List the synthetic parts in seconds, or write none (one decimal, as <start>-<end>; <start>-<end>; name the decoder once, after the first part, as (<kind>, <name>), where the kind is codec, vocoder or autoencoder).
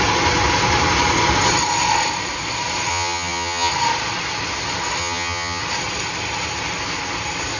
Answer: 2.9-3.7 (vocoder, HiFi-GAN); 5.0-5.6